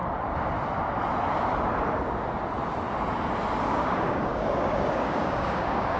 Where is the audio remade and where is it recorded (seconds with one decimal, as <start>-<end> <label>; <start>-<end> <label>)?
0.0-3.6 recorded; 3.6-6.0 remade